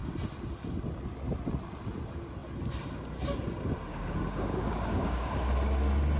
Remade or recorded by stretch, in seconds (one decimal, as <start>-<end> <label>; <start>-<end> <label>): 0.0-3.9 recorded; 3.9-5.5 remade; 5.5-6.2 recorded